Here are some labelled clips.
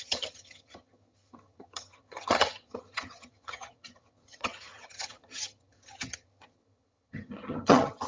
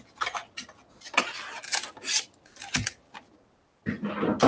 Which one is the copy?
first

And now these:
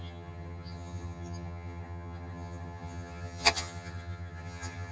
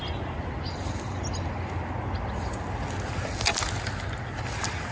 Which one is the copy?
first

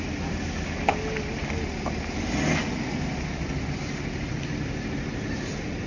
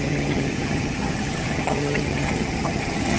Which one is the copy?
second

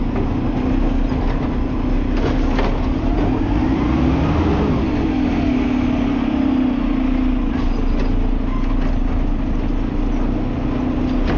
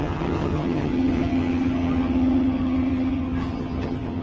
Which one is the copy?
second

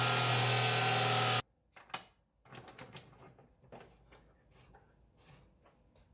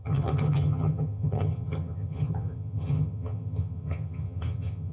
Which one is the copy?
second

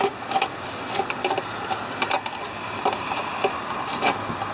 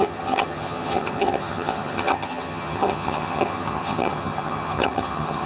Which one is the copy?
second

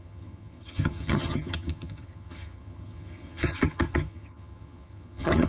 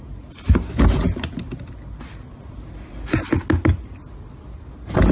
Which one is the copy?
first